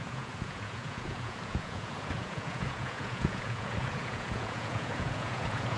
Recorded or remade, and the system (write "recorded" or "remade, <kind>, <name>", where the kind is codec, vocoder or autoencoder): remade, vocoder, Vocos